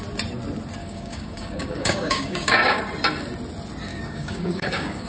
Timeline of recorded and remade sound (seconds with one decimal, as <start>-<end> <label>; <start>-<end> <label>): 0.0-0.8 recorded; 0.8-2.8 remade; 2.8-3.9 recorded; 3.9-5.1 remade